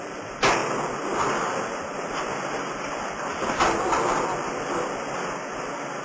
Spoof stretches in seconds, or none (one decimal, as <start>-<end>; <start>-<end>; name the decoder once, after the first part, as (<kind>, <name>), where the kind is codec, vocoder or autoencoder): none

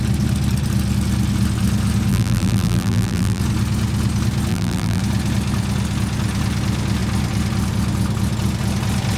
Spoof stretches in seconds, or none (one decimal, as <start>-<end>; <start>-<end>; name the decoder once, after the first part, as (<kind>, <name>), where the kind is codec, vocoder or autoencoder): 2.1-3.4 (vocoder, BigVGAN v2); 4.5-5.0

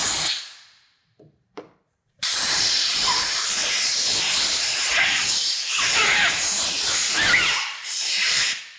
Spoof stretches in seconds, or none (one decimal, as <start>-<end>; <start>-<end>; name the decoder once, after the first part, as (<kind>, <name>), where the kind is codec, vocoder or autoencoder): 0.6-3.6 (vocoder, BigVGAN v2); 7.8-8.8